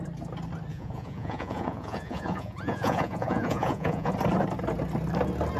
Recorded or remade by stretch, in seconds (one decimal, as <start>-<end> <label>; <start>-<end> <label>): 0.0-0.7 recorded; 0.7-4.1 remade; 4.1-5.6 recorded